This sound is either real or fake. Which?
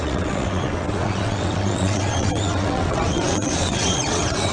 fake